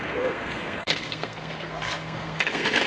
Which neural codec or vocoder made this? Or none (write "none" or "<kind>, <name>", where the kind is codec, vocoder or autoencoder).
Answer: codec, SNAC